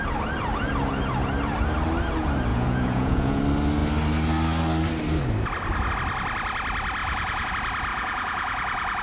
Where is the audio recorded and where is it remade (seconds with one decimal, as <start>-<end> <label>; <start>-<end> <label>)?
0.0-2.5 recorded; 2.5-3.4 remade; 3.4-7.0 recorded; 7.0-7.5 remade; 7.5-7.9 recorded; 7.9-9.0 remade